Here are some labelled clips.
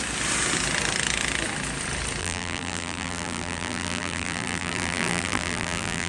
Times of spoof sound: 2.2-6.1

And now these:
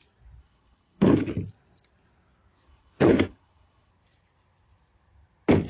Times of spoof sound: 0.4-1.3; 2.7-3.9

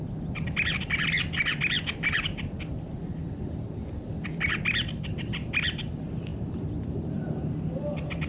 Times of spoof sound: none

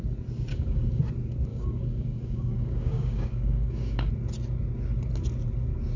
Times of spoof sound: 0.5-1.0; 1.5-4.1

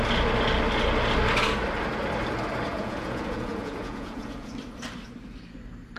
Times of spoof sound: 2.7-4.5